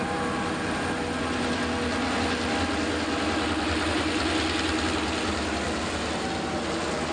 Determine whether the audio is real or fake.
real